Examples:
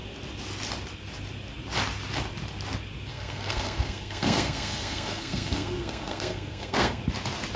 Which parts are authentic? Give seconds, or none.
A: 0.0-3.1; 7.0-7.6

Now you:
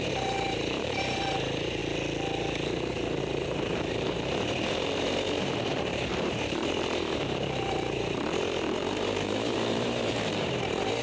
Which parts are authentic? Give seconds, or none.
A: 1.8-3.2

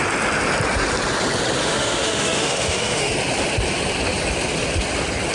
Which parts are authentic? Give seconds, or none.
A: 0.0-1.6; 3.1-5.3

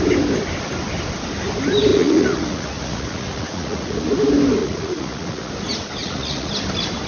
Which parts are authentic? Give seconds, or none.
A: 0.0-1.9; 4.1-4.6; 5.5-6.0; 6.5-7.1

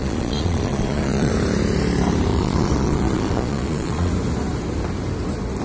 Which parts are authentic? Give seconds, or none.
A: 1.3-2.3; 4.1-5.6

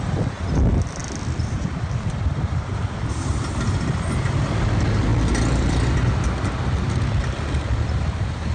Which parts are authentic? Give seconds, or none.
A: 0.0-1.0; 3.3-5.1; 6.1-8.5

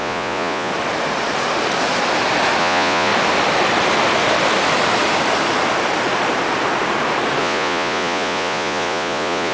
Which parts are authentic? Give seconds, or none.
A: 0.7-2.6; 3.1-7.4